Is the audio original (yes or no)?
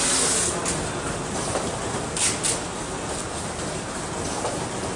yes